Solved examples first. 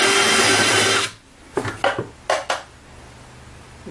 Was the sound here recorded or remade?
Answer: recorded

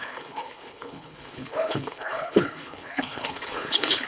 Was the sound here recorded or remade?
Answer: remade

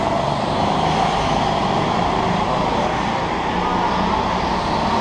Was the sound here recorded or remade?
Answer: recorded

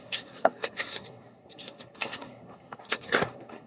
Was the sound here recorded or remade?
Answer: remade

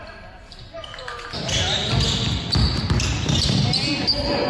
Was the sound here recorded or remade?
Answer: recorded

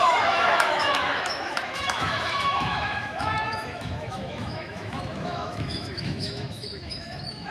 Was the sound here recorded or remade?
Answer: remade